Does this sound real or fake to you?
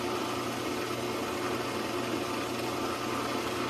real